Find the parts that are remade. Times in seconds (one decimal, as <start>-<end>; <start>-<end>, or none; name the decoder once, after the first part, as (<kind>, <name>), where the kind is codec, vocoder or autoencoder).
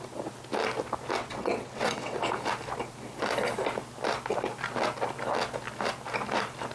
1.2-2.2 (vocoder, WaveNeXt)